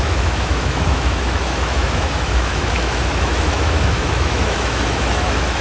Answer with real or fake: fake